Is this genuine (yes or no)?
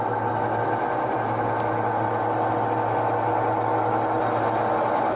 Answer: yes